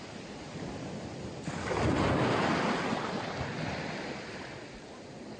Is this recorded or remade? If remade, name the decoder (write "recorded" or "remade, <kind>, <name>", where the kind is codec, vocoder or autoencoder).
recorded